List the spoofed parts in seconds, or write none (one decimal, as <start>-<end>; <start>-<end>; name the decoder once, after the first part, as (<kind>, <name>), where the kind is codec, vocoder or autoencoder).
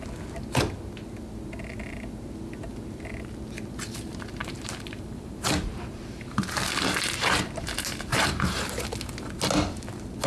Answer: 4.4-6.4 (vocoder, BigVGAN v2); 8.1-8.8